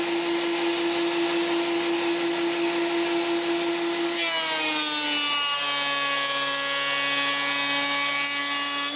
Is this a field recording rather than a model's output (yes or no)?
yes